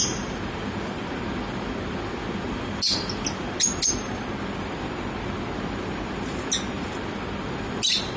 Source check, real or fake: real